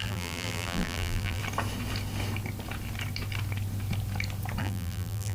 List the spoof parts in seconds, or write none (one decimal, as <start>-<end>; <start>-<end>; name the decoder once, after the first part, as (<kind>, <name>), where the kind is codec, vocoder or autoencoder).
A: 0.0-1.4 (vocoder, BigVGAN v2); 4.6-5.3

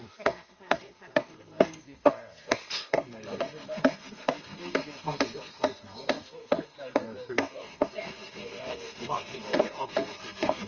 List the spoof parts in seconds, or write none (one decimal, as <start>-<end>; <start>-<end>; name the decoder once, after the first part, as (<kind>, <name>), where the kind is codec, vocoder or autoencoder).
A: 0.0-10.7 (codec, SNAC)

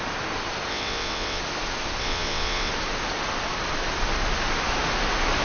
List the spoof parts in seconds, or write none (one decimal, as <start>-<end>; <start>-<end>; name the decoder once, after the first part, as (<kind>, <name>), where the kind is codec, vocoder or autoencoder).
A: 0.7-1.4 (vocoder, WaveNeXt); 2.0-2.7

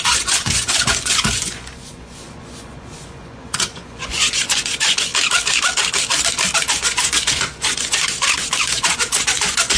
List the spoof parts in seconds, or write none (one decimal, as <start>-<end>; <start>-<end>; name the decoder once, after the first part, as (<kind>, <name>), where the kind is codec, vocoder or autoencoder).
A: 0.0-5.1 (vocoder, Vocos); 6.7-9.8